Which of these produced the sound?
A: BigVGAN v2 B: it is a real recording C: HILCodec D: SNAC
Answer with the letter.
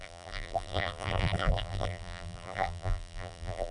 A